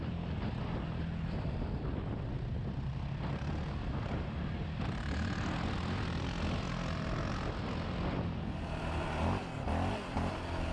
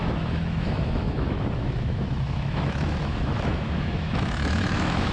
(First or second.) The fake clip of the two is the second